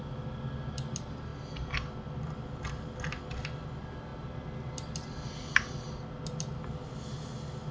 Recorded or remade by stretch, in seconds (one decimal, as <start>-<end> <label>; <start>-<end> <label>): 0.0-7.7 recorded